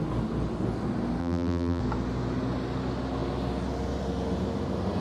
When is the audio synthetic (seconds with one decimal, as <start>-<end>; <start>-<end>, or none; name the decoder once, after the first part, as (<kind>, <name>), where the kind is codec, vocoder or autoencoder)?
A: 1.2-1.8 (vocoder, BigVGAN v2)